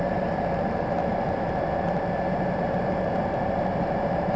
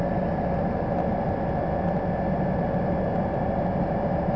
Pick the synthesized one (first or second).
first